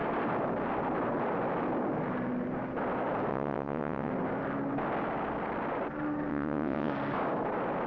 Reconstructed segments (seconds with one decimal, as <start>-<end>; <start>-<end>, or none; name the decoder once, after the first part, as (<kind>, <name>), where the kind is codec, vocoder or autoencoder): 3.3-4.1 (vocoder, WaveNeXt); 6.3-6.9